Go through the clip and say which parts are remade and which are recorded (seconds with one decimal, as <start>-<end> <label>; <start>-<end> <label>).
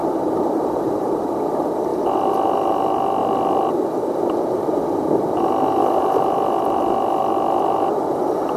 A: 0.0-1.9 remade; 1.9-2.7 recorded; 2.7-3.2 remade; 3.2-4.9 recorded; 4.9-8.6 remade